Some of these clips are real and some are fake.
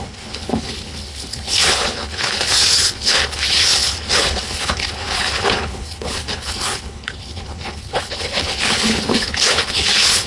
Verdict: fake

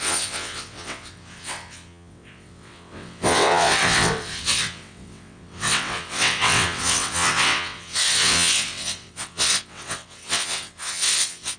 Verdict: fake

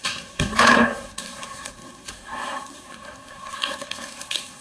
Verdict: fake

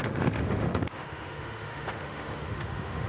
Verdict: fake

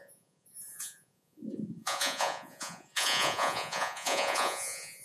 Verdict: fake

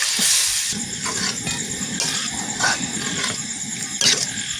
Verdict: real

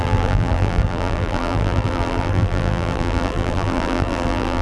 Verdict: fake